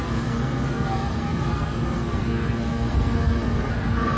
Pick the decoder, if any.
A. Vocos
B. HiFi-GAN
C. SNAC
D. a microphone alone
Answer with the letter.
C